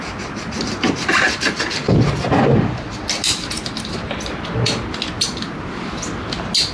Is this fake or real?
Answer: real